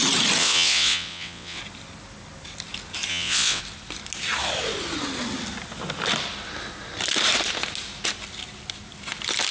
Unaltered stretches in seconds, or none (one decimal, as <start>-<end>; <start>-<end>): 0.0-0.4; 1.6-3.1; 3.6-9.5